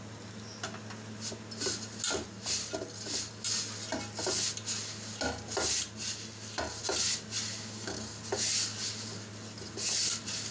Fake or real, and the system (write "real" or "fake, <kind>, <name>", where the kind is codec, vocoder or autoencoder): real